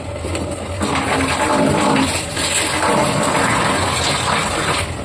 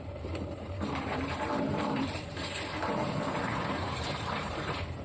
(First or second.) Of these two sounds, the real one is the first